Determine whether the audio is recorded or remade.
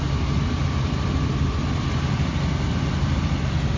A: recorded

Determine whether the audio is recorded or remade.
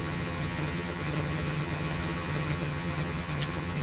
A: remade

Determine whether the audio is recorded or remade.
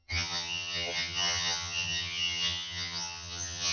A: remade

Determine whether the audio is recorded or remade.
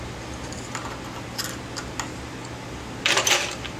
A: recorded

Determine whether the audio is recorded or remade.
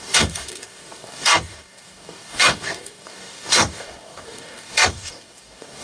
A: remade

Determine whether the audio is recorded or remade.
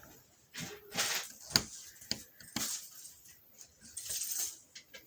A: recorded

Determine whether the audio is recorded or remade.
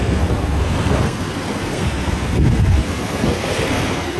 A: remade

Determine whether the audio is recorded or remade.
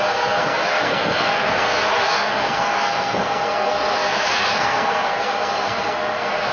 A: remade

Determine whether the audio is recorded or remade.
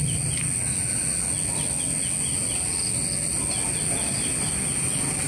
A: recorded